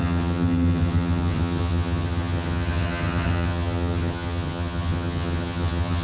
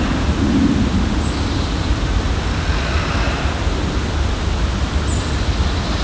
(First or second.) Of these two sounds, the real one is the second